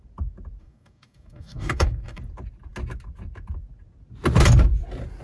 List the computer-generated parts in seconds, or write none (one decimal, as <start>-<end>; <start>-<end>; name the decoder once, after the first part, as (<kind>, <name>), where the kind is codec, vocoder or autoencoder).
0.6-2.2 (codec, DAC)